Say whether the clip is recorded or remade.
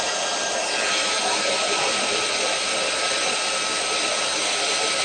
recorded